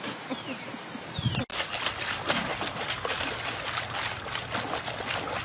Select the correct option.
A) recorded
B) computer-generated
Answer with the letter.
A